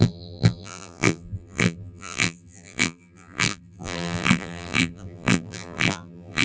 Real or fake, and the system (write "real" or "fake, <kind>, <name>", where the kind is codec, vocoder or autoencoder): fake, vocoder, BigVGAN v2